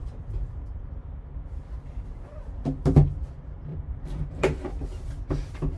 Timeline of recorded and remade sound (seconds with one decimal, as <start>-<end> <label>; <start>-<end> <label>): 0.0-3.7 recorded; 3.7-4.7 remade; 4.7-5.8 recorded